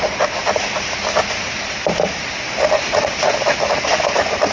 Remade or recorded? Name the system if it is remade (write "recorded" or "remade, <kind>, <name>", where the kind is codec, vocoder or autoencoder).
recorded